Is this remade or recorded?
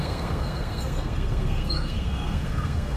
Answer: remade